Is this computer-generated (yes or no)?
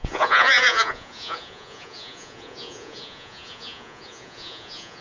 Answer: yes